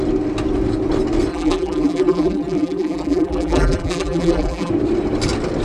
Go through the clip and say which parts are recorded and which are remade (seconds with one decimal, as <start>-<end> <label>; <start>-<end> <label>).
0.0-1.3 recorded; 1.3-4.7 remade; 4.7-5.6 recorded